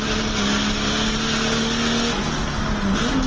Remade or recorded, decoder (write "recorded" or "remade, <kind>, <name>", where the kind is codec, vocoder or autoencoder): recorded